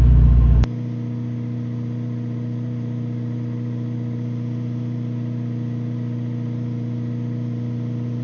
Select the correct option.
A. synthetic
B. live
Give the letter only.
B